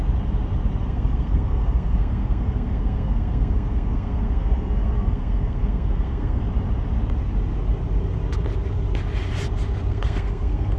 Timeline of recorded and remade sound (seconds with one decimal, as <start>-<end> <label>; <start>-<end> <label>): 0.0-0.8 recorded; 0.8-6.4 remade; 6.4-9.9 recorded; 9.9-10.8 remade